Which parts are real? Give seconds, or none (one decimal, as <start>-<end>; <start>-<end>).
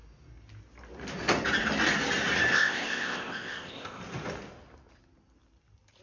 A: 0.0-2.5; 4.0-6.0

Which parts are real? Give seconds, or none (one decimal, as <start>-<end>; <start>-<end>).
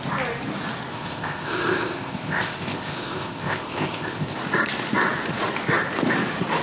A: 0.0-0.9; 4.4-6.6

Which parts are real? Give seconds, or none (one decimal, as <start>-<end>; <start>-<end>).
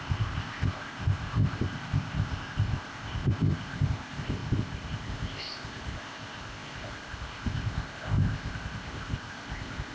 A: none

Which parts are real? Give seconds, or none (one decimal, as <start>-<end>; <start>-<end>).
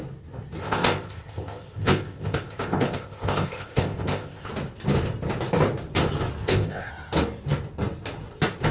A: 0.0-0.6; 4.5-6.4; 6.9-8.7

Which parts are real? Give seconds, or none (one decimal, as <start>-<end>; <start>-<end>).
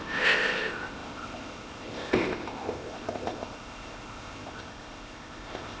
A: none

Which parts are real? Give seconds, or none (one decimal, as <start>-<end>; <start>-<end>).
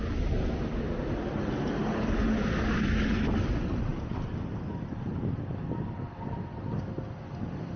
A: 0.0-7.8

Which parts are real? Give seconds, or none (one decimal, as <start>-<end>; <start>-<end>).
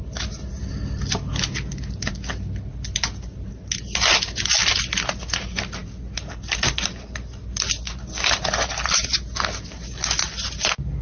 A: 0.0-11.0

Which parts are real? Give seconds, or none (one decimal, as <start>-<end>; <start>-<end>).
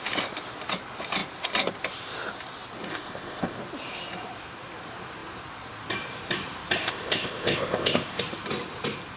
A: 0.0-2.9; 3.6-6.8; 8.2-9.2